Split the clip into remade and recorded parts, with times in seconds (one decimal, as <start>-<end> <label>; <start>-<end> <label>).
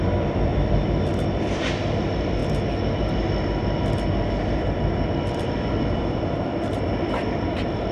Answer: 0.0-7.9 remade